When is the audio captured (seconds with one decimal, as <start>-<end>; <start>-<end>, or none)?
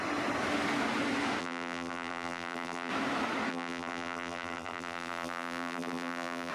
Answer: 0.0-1.4; 2.9-3.5